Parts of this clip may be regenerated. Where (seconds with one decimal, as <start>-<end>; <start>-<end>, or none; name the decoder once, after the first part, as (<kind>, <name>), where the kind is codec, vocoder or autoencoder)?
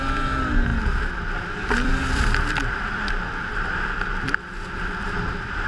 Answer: 0.7-1.9 (vocoder, BigVGAN v2); 2.6-5.7